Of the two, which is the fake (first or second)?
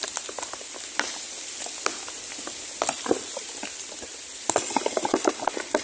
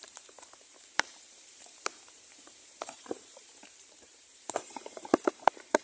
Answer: second